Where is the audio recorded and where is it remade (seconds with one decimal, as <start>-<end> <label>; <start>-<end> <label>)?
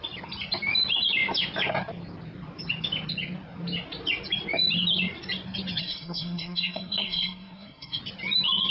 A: 0.0-5.8 recorded; 5.8-8.0 remade; 8.0-8.7 recorded